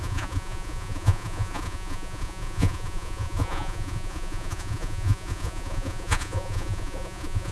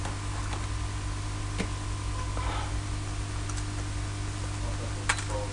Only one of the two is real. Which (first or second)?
second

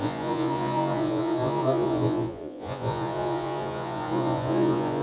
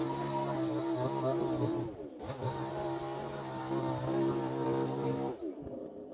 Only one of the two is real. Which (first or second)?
second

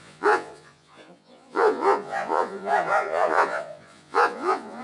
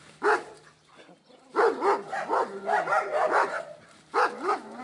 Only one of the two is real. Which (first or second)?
second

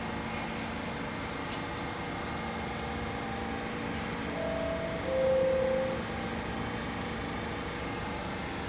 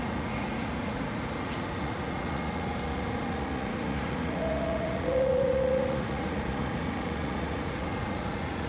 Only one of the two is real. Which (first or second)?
first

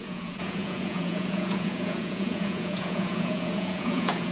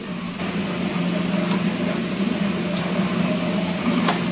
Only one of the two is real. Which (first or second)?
second